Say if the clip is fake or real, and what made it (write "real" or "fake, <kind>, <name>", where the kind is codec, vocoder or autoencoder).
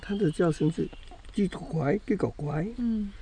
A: real